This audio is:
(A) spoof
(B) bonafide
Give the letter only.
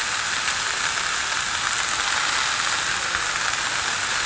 B